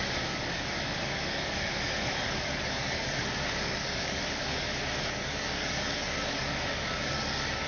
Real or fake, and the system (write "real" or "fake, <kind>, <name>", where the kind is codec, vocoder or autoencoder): fake, codec, DAC